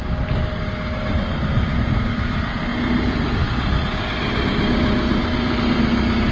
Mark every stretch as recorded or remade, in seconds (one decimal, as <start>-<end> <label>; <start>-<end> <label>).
0.0-6.3 recorded